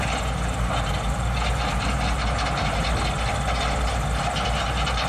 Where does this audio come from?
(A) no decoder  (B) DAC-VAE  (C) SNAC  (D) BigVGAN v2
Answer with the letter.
A